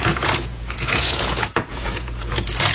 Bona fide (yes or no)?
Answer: no